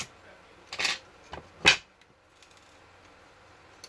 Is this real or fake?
real